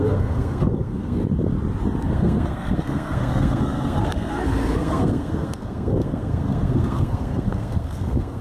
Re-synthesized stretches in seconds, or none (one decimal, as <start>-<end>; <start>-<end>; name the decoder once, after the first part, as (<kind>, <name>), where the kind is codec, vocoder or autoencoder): 0.0-1.2 (codec, SNAC); 2.0-8.4

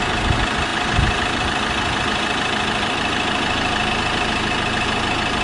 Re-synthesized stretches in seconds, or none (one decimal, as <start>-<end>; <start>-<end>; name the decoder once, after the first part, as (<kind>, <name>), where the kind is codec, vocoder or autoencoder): 0.7-3.9 (vocoder, BigVGAN v2)

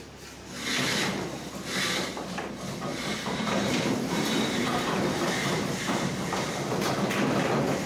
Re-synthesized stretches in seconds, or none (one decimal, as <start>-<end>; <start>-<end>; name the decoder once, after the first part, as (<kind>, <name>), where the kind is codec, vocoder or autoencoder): 2.9-6.9 (vocoder, BigVGAN v2)

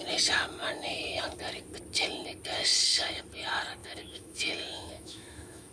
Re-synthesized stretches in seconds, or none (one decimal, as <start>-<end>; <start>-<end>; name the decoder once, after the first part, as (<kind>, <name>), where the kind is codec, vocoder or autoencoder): 3.8-5.7 (autoencoder, DAC-VAE)

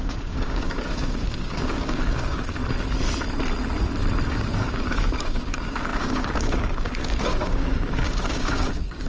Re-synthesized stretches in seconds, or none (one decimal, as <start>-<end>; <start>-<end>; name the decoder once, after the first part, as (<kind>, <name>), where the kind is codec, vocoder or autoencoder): 0.0-2.6 (codec, DAC); 4.3-9.1

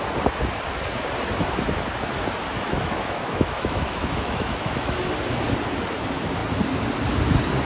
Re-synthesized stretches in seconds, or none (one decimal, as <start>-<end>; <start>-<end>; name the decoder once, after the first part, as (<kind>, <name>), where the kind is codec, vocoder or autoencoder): 2.7-5.0 (autoencoder, DAC-VAE)

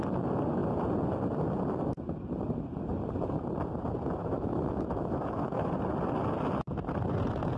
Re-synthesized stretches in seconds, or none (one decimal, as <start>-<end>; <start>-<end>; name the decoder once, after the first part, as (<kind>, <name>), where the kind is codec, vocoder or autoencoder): 4.2-5.7 (autoencoder, DAC-VAE)

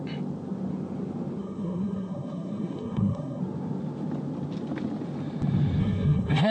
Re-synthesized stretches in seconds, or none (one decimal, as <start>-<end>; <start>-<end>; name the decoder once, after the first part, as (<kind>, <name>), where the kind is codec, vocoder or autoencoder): 1.4-3.4 (codec, SNAC); 5.8-6.5